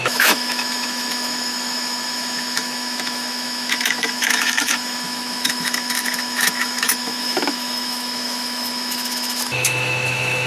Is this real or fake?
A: fake